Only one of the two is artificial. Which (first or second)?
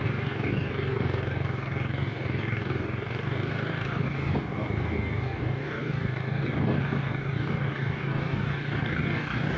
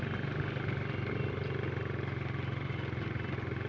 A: first